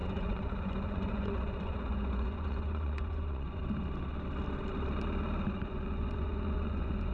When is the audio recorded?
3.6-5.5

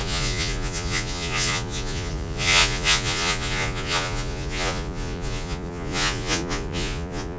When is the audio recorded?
none

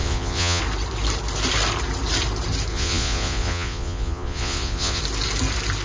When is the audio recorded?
0.6-2.7; 5.0-5.8

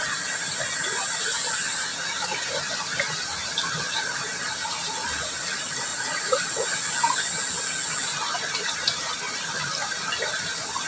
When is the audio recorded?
0.0-1.9; 2.5-5.9; 6.5-10.9

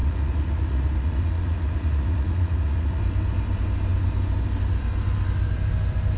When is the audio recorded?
3.0-6.2

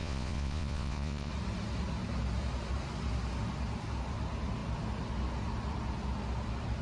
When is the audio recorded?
1.3-6.8

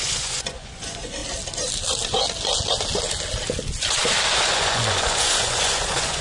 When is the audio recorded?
1.2-4.3